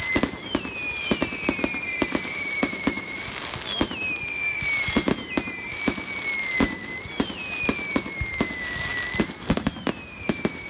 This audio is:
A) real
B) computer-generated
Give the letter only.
A